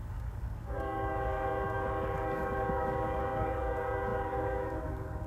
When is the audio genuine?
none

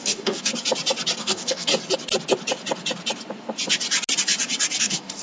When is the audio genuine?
0.5-1.2; 1.7-4.8

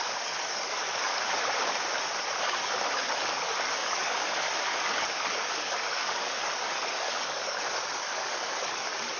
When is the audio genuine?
1.1-2.4

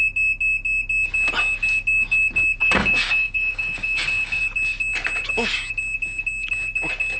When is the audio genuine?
0.0-2.6; 4.4-7.2

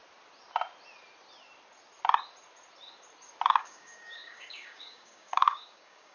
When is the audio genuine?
0.0-3.5

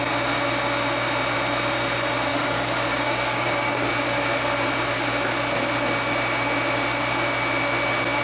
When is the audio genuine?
0.0-2.3; 3.9-8.2